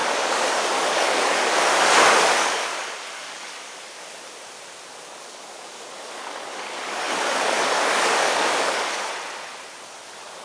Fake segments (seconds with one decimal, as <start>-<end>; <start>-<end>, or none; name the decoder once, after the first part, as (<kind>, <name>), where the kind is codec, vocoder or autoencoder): 0.0-4.2 (codec, DAC); 5.2-9.1